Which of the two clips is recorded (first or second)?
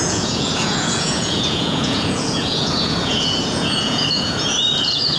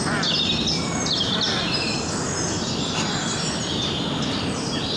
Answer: second